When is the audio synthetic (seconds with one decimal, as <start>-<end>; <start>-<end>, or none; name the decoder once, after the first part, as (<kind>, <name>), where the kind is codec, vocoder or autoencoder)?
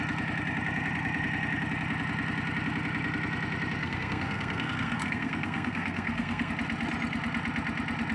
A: 3.8-6.5 (codec, SNAC)